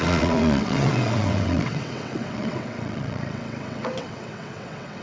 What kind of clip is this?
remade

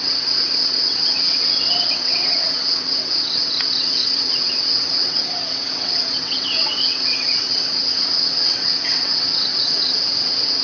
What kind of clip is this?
remade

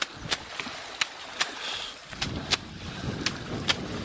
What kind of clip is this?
recorded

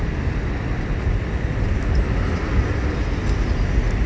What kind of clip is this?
recorded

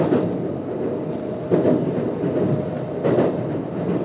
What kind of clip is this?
recorded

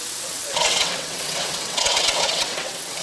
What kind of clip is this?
remade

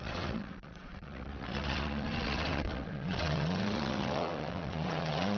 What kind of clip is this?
remade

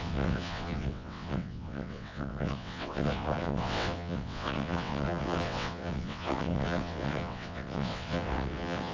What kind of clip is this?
remade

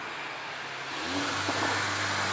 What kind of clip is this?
recorded